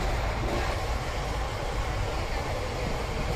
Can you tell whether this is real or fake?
real